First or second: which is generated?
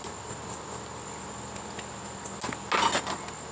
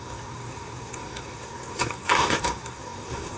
second